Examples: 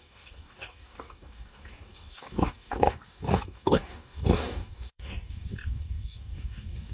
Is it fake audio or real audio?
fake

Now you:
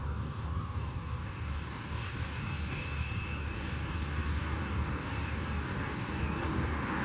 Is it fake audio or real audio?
fake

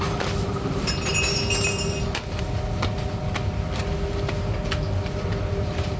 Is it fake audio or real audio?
real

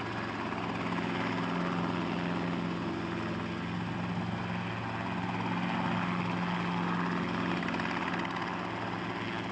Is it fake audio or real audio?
real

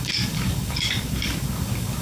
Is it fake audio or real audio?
fake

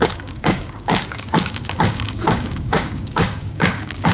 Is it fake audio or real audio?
fake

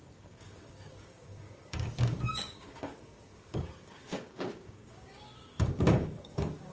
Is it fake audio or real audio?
fake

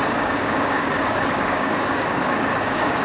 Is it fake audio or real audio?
fake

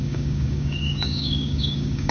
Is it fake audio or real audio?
fake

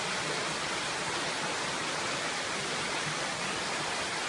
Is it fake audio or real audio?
real